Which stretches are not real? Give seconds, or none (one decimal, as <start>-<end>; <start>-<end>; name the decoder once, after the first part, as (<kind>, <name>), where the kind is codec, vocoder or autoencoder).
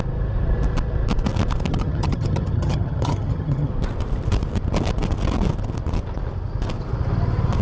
1.7-3.7 (vocoder, HiFi-GAN)